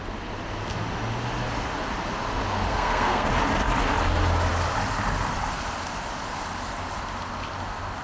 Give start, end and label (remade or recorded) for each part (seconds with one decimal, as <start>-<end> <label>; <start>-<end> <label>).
0.0-2.7 recorded; 2.7-3.3 remade; 3.3-8.0 recorded